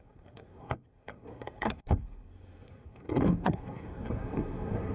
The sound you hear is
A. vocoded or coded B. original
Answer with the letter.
A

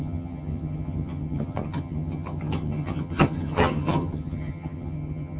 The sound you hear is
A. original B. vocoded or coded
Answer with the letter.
B